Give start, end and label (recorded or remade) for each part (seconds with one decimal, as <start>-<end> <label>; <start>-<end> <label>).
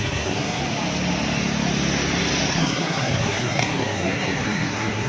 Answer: 0.0-0.6 remade; 0.6-2.5 recorded; 2.5-5.1 remade